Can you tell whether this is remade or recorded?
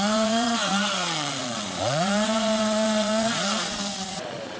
remade